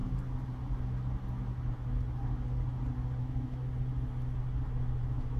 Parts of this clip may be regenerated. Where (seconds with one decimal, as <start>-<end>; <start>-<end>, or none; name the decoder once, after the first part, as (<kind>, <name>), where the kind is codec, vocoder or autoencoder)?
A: 3.2-3.6 (autoencoder, DAC-VAE); 5.0-5.4